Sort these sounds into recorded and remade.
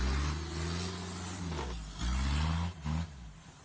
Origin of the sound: recorded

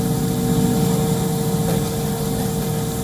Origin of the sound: recorded